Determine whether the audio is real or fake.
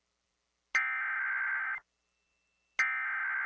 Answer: real